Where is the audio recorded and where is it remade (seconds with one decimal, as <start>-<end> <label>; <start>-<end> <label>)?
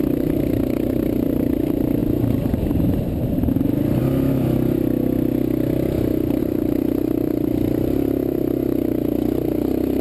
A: 0.0-4.0 remade; 4.0-6.4 recorded; 6.4-10.0 remade